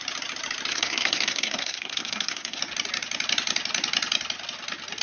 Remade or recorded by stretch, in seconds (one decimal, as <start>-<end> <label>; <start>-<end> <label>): 0.0-0.7 recorded; 0.7-2.6 remade; 2.6-5.0 recorded